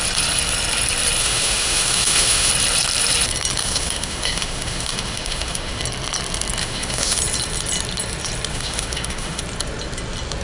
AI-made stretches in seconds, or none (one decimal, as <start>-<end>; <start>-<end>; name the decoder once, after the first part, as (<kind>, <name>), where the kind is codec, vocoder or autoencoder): 1.2-2.5 (autoencoder, DAC-VAE); 3.6-5.8; 6.6-7.2; 8.5-9.4